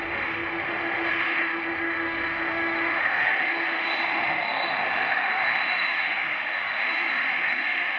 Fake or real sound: fake